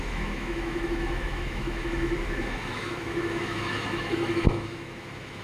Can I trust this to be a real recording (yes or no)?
no